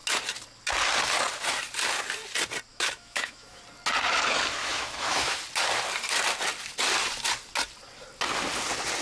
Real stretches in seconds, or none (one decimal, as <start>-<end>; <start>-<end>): 0.0-2.7; 3.6-4.6; 5.4-9.0